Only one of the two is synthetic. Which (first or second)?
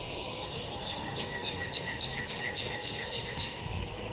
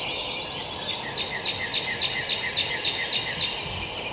first